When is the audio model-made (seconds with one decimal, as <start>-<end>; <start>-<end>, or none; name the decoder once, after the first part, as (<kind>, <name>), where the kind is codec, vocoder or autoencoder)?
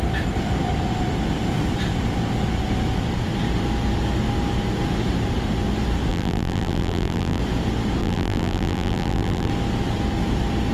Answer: 6.1-7.4 (vocoder, BigVGAN v2); 8.0-9.5